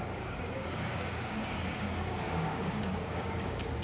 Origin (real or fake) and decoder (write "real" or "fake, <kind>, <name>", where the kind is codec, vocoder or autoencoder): fake, codec, DAC